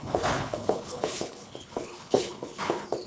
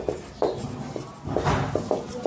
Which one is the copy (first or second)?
first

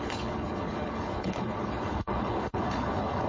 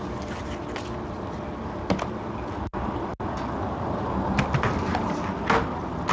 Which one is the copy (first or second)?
first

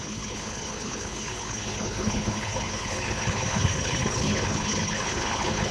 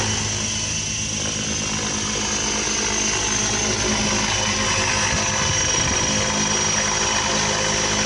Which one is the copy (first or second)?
first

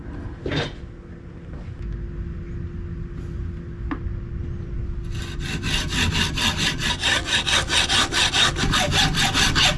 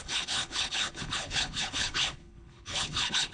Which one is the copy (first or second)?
second